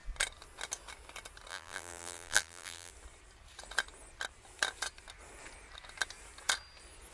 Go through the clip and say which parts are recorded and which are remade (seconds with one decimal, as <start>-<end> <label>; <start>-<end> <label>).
0.0-1.5 recorded; 1.5-2.9 remade; 2.9-7.1 recorded